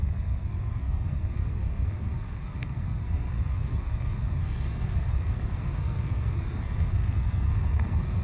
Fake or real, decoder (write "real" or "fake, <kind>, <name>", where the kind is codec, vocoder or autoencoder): fake, codec, SNAC